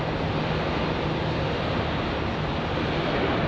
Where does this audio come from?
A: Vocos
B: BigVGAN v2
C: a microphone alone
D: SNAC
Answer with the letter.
C